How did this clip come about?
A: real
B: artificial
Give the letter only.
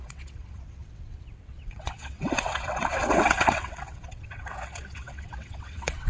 B